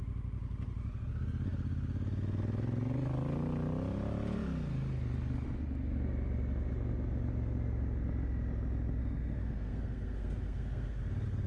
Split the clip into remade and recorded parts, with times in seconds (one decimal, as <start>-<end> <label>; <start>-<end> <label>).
0.0-9.0 recorded; 9.0-11.0 remade; 11.0-11.5 recorded